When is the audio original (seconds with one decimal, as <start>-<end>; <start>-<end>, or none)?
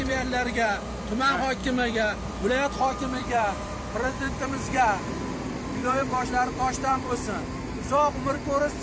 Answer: none